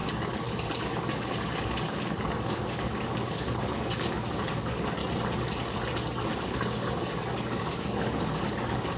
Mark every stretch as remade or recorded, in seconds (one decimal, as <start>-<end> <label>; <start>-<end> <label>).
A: 0.0-5.0 remade; 5.0-6.3 recorded; 6.3-9.0 remade